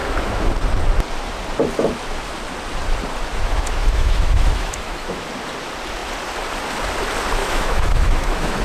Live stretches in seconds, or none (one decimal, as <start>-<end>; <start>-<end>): 0.5-3.3; 5.3-7.4